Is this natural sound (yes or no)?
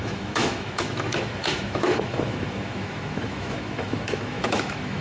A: no